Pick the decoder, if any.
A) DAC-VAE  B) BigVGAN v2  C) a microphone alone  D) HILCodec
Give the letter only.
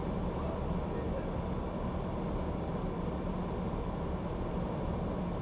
C